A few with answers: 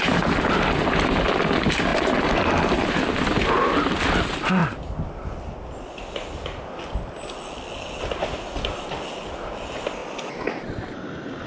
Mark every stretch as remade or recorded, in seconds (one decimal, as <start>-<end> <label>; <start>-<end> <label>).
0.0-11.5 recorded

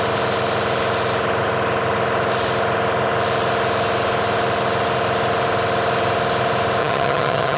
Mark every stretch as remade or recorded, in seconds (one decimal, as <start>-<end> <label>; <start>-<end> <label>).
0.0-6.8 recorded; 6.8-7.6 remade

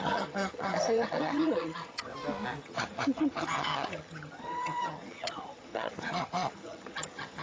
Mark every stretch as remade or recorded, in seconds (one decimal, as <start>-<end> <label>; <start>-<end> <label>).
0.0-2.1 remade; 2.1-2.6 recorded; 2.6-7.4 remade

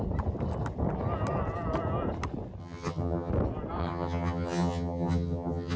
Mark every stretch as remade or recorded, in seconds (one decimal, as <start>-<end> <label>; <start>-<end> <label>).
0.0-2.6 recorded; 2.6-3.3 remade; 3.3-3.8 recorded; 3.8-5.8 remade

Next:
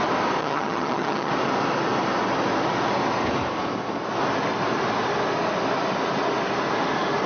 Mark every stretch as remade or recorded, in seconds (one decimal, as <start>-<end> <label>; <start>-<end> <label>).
0.0-0.4 recorded; 0.4-1.3 remade; 1.3-7.3 recorded

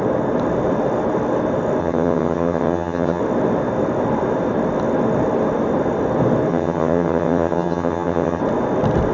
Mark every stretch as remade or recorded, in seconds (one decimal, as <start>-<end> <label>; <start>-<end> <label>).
0.0-1.8 recorded; 1.8-3.2 remade; 3.2-6.5 recorded; 6.5-8.4 remade; 8.4-9.1 recorded

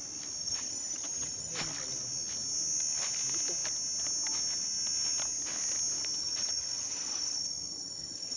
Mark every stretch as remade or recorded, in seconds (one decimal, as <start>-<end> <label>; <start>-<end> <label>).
0.0-0.4 recorded; 0.4-1.5 remade; 1.5-6.2 recorded; 6.2-8.4 remade

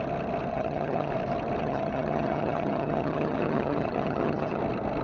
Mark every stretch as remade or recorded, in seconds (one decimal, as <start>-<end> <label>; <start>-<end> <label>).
0.0-0.5 recorded; 0.5-1.1 remade; 1.1-1.6 recorded; 1.6-4.6 remade; 4.6-5.0 recorded